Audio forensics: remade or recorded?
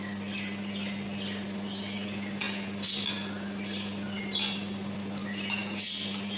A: recorded